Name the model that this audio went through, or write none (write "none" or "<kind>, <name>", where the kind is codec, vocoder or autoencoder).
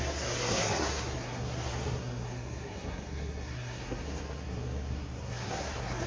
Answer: codec, SNAC